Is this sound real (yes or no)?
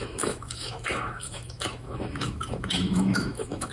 no